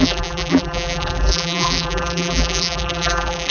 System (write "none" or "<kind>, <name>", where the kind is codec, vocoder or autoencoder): vocoder, BigVGAN v2